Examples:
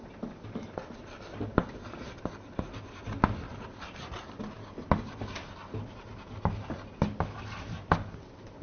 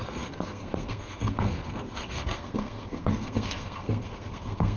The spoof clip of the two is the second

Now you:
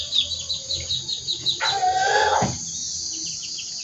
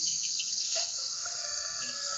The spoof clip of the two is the second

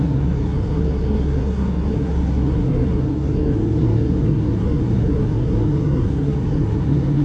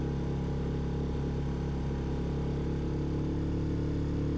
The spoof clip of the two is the first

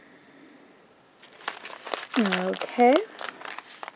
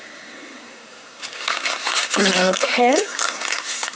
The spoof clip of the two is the second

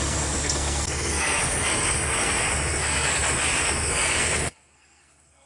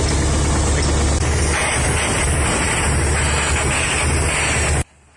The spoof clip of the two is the first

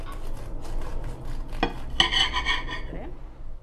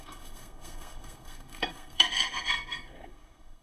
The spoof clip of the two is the second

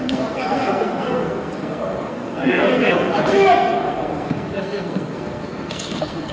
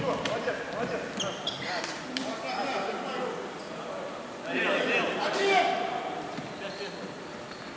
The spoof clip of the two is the first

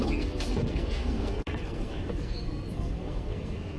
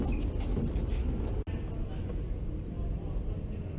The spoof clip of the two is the first